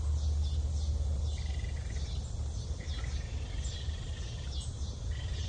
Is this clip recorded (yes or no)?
yes